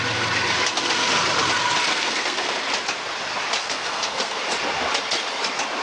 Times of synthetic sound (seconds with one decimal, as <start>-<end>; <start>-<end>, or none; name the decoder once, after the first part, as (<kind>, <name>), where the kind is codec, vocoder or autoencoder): 1.9-2.5 (codec, SNAC); 3.6-4.4